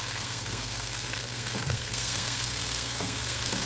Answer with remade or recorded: remade